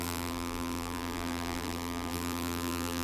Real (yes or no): no